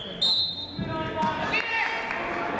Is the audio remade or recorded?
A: recorded